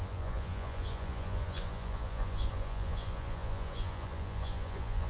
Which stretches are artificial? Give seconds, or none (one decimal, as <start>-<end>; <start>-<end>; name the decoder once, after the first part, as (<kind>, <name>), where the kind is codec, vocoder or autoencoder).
0.0-5.1 (vocoder, Vocos)